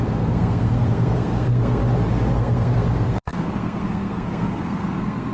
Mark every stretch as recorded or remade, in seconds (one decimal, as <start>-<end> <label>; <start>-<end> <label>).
0.0-1.8 remade; 1.8-2.3 recorded; 2.3-5.3 remade